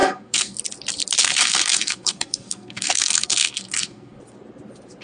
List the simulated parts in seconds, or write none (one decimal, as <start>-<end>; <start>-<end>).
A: 0.0-0.6; 1.2-4.2